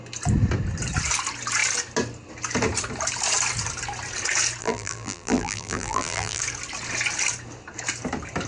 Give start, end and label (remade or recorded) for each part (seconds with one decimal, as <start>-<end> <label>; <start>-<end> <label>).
0.0-4.6 recorded; 4.6-6.4 remade; 6.4-8.5 recorded